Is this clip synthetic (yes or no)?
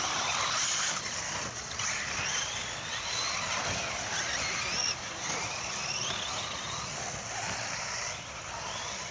no